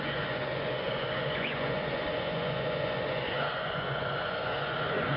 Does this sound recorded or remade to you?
remade